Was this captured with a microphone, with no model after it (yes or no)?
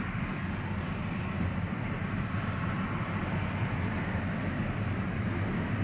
yes